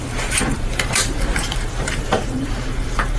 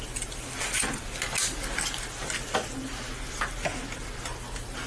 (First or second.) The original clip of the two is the second